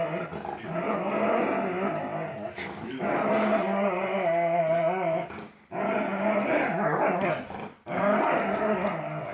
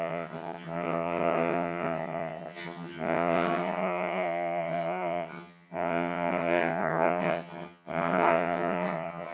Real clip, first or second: first